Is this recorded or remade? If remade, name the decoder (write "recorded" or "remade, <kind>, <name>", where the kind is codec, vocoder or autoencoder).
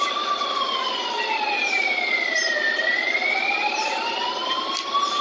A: recorded